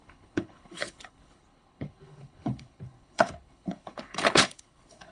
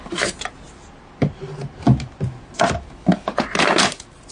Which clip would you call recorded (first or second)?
second